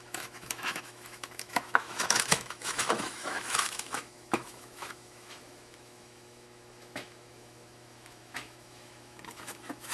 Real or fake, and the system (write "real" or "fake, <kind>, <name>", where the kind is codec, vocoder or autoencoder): fake, autoencoder, DAC-VAE